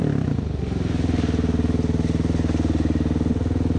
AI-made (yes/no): no